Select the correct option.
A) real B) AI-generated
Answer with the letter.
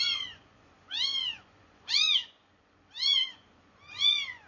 B